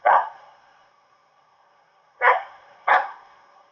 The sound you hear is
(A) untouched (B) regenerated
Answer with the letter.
B